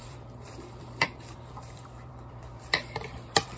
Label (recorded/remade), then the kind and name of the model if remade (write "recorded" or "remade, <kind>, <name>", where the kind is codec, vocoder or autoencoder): remade, vocoder, BigVGAN v2